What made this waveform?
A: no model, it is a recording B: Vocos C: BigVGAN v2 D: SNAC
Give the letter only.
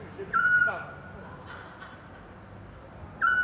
A